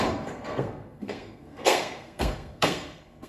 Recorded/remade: remade